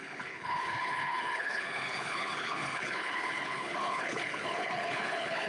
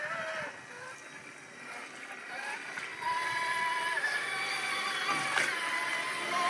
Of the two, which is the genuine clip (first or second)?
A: second